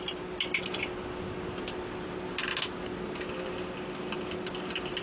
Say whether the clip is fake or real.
real